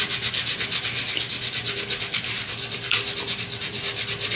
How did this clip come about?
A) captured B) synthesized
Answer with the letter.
A